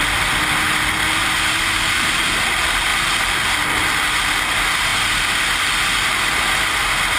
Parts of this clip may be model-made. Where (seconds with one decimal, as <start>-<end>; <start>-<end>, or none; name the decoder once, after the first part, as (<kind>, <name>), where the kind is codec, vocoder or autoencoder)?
1.2-2.2 (vocoder, BigVGAN v2)